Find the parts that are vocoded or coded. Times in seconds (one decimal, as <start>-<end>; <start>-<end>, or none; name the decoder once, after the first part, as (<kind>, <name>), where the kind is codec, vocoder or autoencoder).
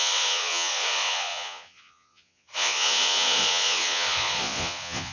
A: 0.0-5.1 (vocoder, Vocos)